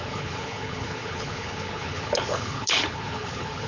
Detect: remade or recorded remade